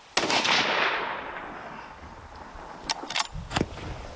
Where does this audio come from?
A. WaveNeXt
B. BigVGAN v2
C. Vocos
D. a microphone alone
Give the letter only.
D